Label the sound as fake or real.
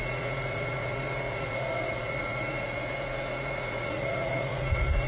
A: fake